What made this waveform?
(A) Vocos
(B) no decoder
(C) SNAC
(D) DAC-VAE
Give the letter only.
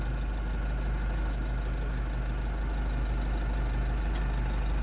B